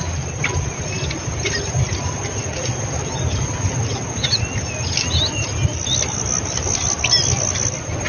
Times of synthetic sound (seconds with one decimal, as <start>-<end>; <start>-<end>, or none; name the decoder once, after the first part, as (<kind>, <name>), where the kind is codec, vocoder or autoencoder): none